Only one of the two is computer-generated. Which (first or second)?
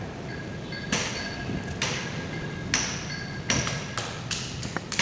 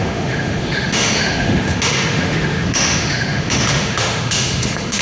second